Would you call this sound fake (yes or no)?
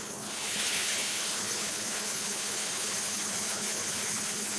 yes